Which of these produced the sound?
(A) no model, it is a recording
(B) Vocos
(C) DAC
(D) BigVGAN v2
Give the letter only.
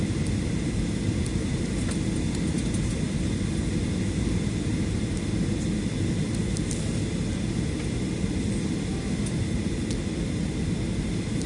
A